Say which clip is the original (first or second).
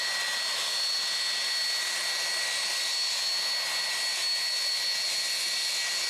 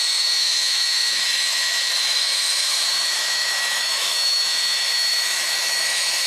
first